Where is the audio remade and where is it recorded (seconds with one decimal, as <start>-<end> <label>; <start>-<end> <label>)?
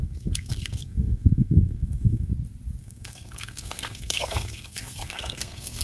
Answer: 0.0-2.3 remade; 2.3-2.8 recorded; 2.8-5.8 remade